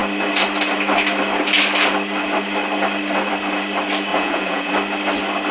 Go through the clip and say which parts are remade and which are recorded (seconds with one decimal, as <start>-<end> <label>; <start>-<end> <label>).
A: 0.0-4.1 recorded; 4.1-4.7 remade; 4.7-5.5 recorded